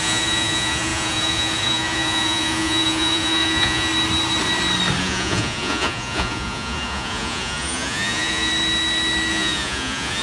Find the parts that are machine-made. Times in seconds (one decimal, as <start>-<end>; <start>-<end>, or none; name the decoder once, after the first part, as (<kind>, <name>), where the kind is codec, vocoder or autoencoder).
0.0-3.9 (vocoder, Vocos); 5.0-8.5; 9.3-10.2